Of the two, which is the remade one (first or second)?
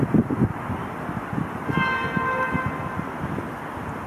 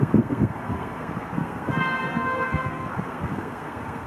second